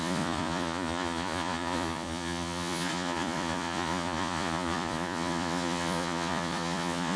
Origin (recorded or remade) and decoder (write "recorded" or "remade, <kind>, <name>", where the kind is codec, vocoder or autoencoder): remade, vocoder, Vocos